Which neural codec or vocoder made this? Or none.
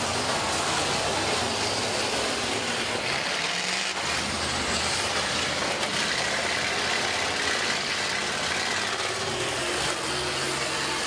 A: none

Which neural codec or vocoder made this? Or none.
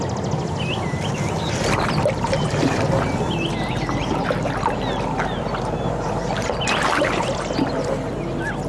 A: none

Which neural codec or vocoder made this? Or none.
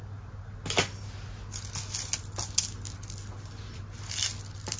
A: none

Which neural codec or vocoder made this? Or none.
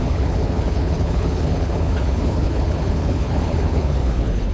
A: codec, HILCodec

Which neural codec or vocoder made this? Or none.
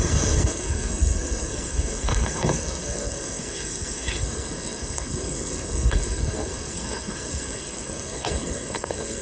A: codec, SNAC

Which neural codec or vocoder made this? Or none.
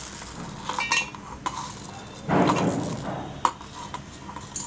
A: none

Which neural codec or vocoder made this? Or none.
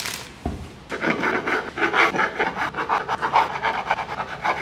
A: none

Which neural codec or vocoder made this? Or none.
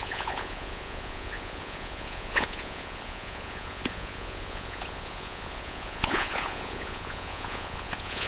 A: vocoder, Vocos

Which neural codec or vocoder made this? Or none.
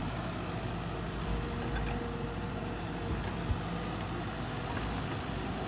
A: none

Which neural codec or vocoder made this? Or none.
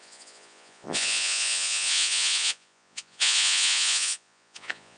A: vocoder, Vocos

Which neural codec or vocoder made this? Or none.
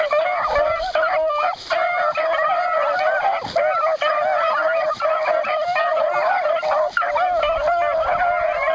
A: none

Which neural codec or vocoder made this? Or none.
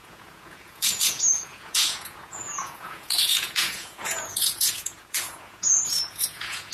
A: vocoder, Vocos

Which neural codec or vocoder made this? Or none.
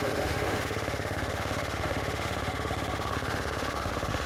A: autoencoder, DAC-VAE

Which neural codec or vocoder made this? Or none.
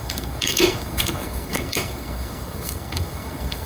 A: codec, SNAC